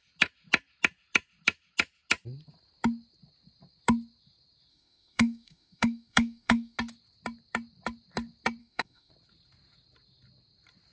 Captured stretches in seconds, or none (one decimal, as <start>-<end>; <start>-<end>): 0.0-4.7; 6.8-8.6; 9.1-10.9